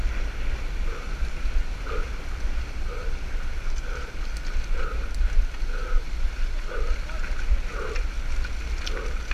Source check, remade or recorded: recorded